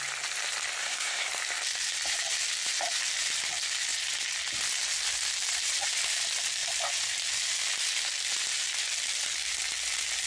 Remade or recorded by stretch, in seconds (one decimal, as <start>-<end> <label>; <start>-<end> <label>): 0.0-0.8 recorded; 0.8-1.3 remade; 1.3-10.3 recorded